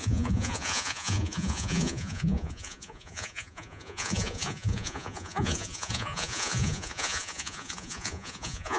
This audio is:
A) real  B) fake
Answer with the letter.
B